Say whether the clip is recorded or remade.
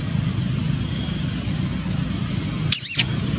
recorded